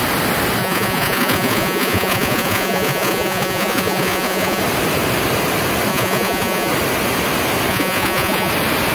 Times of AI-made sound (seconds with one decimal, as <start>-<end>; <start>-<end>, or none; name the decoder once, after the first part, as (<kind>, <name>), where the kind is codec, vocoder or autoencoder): 0.6-4.6 (vocoder, Vocos); 5.9-6.7; 7.7-8.5